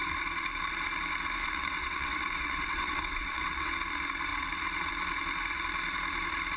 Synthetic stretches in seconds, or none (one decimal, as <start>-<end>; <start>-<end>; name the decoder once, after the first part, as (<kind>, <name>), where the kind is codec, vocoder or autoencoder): 1.4-3.7 (vocoder, WaveNeXt)